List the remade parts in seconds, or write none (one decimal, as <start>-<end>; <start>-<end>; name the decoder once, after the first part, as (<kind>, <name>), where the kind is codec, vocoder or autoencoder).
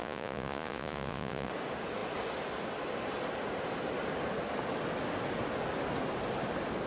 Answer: 0.0-1.5 (vocoder, Vocos)